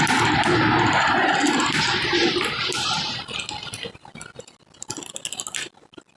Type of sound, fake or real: real